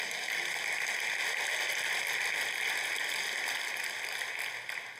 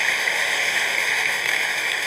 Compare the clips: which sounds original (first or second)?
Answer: first